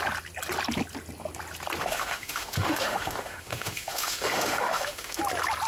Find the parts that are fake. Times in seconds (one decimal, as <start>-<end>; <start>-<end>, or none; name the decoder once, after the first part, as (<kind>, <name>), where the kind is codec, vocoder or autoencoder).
1.8-5.2 (autoencoder, DAC-VAE)